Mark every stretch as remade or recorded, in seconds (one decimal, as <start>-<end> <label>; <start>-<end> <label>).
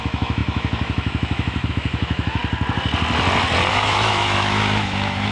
0.0-2.4 remade; 2.4-3.7 recorded; 3.7-5.3 remade